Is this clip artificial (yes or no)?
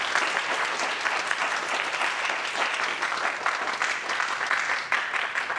no